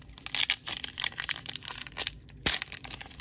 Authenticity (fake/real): fake